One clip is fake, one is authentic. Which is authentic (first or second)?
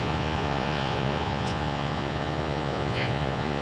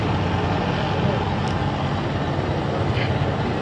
second